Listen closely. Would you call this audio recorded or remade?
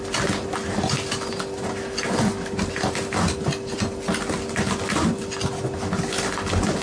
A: recorded